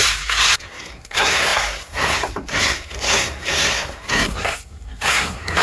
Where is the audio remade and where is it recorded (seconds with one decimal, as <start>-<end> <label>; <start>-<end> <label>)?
0.0-5.6 remade